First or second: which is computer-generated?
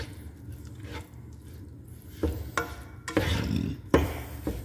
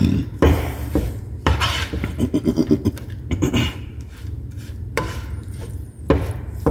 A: second